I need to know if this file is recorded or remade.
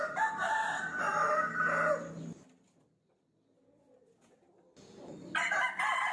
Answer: recorded